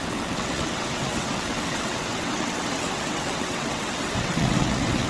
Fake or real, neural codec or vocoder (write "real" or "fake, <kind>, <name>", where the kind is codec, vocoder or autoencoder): fake, vocoder, WaveNeXt